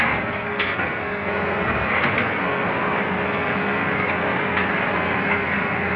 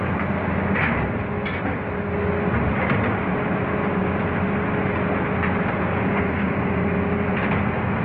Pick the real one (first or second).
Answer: second